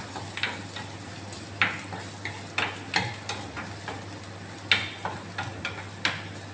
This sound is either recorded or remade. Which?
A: recorded